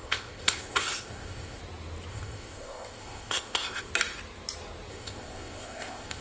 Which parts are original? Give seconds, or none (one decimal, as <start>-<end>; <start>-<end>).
1.6-2.1; 3.9-4.9